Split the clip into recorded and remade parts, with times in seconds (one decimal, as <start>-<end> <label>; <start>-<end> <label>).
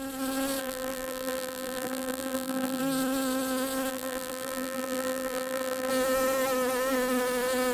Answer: 0.0-0.6 recorded; 0.6-2.8 remade; 2.8-3.9 recorded; 3.9-5.9 remade; 5.9-7.7 recorded